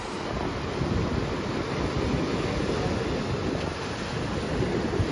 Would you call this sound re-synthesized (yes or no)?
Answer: no